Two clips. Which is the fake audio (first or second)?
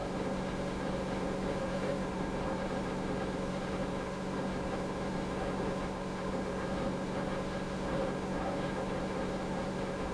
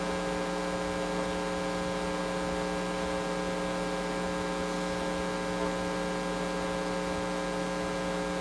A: first